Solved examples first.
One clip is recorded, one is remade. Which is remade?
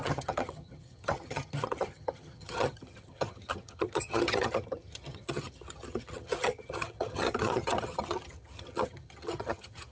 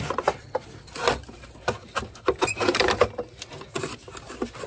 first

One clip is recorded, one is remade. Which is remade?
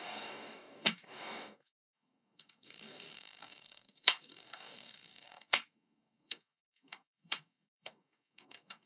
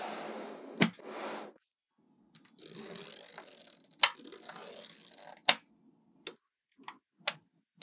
first